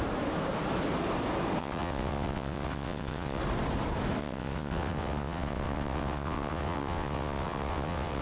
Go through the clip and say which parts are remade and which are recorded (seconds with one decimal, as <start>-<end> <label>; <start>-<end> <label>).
0.0-1.6 recorded; 1.6-3.4 remade; 3.4-4.2 recorded; 4.2-8.2 remade